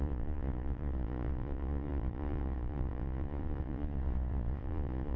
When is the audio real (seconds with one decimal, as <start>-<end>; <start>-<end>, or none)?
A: none

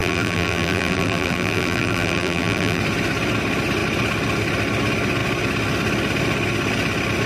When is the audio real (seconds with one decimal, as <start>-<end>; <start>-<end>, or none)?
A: 2.8-7.3

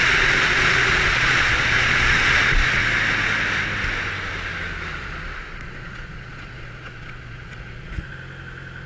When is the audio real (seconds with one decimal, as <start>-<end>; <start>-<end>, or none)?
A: 2.8-4.9; 8.1-8.9

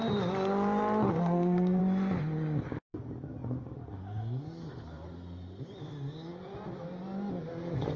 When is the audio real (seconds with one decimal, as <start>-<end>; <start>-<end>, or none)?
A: 0.0-1.1; 1.8-8.0

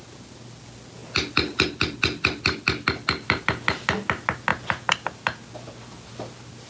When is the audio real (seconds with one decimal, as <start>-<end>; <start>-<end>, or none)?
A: 0.0-6.7